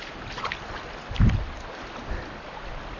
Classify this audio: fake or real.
real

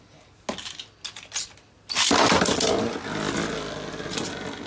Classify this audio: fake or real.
real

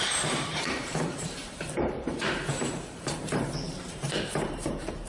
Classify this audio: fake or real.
fake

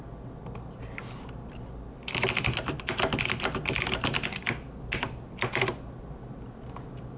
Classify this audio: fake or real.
real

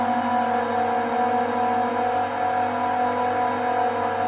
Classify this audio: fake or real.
real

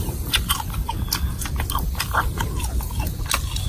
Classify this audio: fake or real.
real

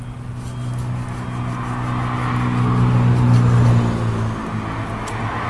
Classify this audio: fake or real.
real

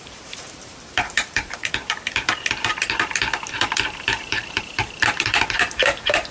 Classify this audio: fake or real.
fake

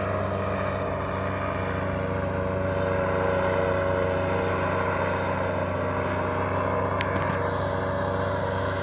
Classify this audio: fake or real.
real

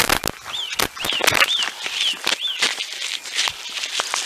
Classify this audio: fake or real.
real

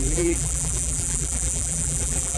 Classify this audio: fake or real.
fake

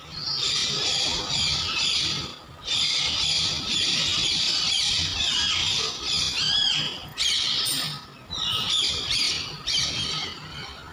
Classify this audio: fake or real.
fake